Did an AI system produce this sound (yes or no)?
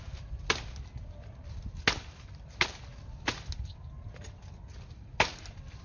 no